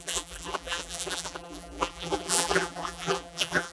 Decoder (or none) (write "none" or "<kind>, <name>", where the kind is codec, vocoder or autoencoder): vocoder, BigVGAN v2